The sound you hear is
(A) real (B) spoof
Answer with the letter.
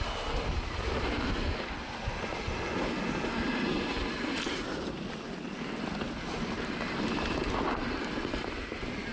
A